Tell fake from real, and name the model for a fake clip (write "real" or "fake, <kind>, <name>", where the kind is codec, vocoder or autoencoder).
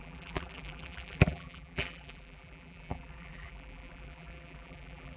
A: fake, vocoder, BigVGAN v2